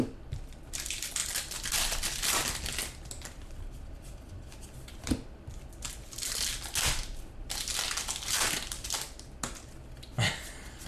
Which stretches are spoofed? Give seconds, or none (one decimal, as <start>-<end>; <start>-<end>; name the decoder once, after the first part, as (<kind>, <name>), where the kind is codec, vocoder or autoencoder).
none